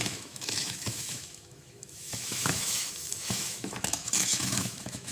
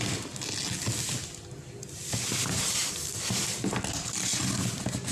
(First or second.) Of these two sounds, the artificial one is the first